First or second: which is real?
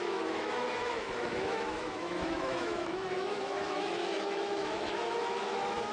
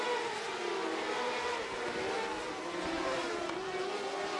second